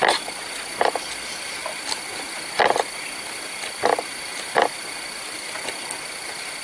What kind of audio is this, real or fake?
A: real